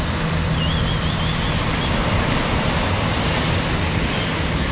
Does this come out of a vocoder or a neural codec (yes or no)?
no